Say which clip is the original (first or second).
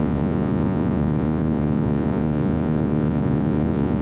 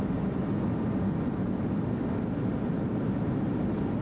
second